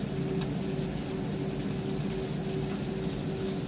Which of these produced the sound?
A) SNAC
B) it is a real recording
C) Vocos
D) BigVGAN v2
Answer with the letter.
B